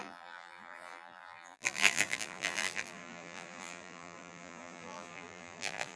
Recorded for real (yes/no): no